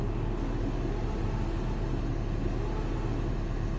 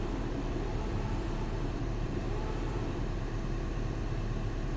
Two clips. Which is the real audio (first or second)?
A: first